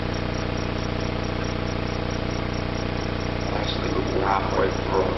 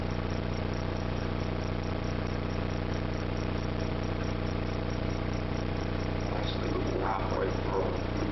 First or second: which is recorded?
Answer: first